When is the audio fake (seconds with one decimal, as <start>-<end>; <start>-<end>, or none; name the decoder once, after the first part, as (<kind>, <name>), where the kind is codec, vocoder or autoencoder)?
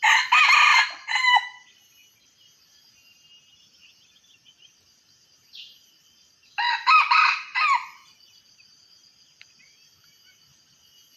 none